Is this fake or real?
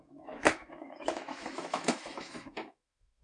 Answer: fake